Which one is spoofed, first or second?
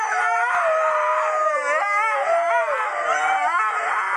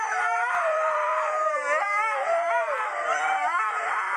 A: second